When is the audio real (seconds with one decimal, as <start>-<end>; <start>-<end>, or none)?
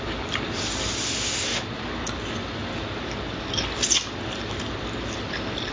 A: 0.0-5.7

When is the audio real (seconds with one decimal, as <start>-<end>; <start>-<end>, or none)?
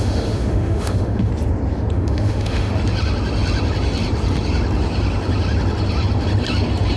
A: 1.3-1.9; 2.7-7.0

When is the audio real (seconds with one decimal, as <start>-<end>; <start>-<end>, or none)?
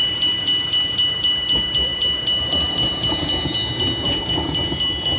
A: 0.0-5.2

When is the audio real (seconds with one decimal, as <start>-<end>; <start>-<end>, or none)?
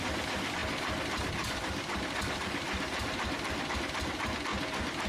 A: 0.6-3.7; 4.5-5.1